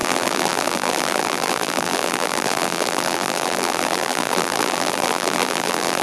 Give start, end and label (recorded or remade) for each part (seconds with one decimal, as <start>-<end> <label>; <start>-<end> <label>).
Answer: 0.0-6.0 remade